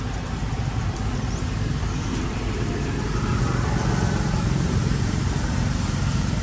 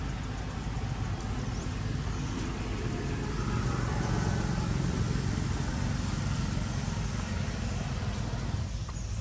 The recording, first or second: second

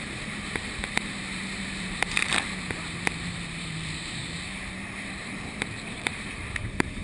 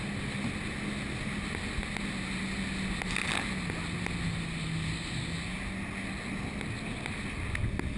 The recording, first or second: second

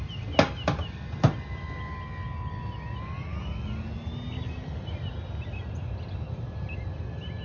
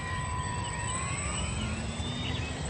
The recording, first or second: first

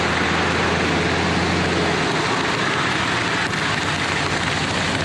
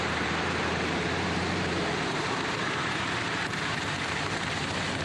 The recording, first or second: first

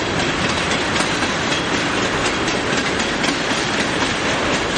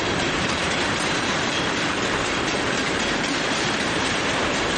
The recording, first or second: first